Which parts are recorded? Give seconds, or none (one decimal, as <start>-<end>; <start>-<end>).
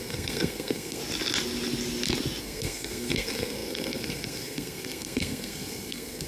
1.0-2.4